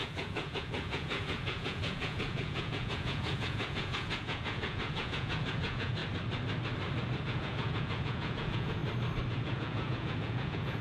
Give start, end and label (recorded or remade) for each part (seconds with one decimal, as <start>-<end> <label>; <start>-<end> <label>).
0.0-6.0 remade; 6.0-7.2 recorded; 7.2-8.8 remade; 8.8-9.3 recorded; 9.3-10.8 remade

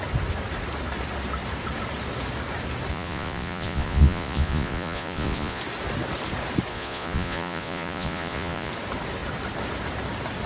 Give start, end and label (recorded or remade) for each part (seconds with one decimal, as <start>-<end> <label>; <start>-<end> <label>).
0.0-2.9 recorded; 2.9-5.6 remade; 5.6-6.7 recorded; 6.7-8.7 remade; 8.7-10.5 recorded

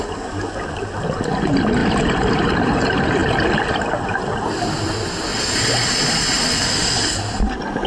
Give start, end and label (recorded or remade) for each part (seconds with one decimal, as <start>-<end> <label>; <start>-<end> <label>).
0.0-7.9 recorded

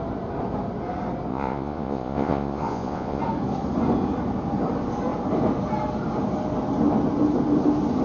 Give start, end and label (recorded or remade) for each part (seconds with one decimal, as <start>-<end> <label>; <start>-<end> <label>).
0.0-1.3 recorded; 1.3-3.2 remade; 3.2-8.0 recorded

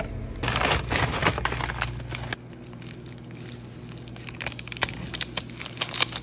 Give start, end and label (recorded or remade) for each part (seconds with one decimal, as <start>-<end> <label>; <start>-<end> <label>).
0.0-6.2 recorded

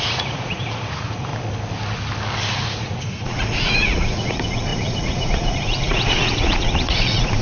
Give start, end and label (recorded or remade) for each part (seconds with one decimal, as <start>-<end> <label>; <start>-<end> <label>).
0.0-1.3 remade; 1.3-2.6 recorded; 2.6-7.4 remade

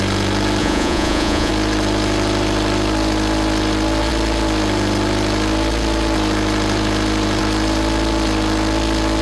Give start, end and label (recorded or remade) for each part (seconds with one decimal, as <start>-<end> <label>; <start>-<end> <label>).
0.0-0.6 recorded; 0.6-1.5 remade; 1.5-9.2 recorded